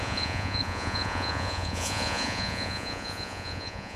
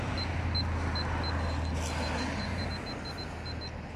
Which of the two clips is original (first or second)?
second